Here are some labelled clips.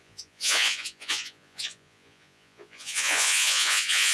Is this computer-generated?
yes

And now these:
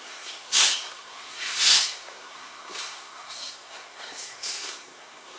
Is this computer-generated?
yes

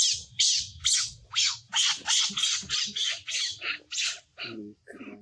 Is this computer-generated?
no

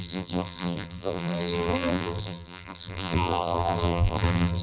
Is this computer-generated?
yes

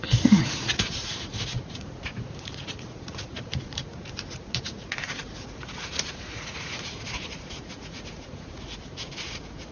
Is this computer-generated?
yes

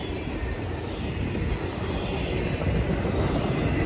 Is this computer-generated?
no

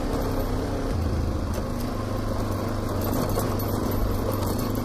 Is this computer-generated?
no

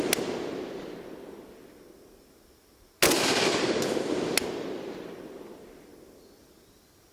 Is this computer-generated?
no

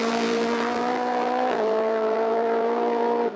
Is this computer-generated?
yes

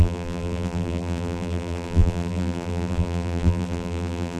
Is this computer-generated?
yes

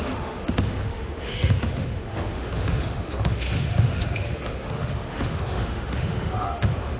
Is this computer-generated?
yes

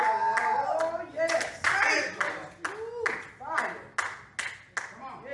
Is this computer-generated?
no